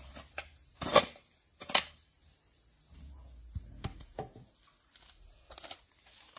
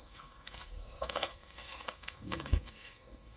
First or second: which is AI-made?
second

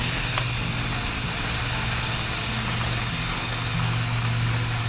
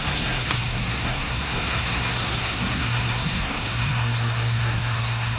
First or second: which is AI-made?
second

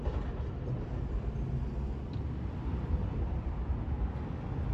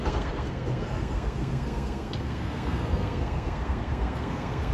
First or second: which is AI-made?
second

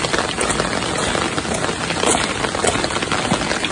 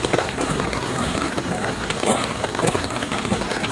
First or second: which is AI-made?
second